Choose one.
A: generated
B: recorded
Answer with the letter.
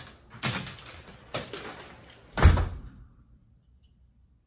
B